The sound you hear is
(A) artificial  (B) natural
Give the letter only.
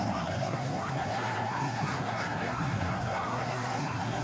A